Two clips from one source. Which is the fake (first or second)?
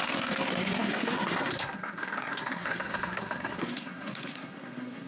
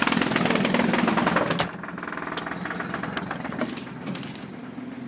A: first